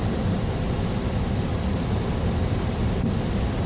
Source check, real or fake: real